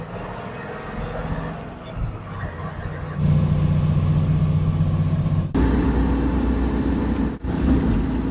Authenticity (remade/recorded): recorded